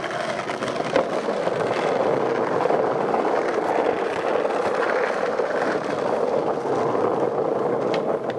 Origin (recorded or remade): recorded